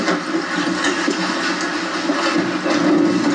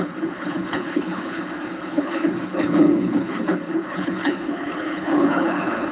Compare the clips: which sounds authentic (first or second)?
first